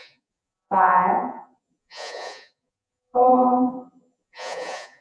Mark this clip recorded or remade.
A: remade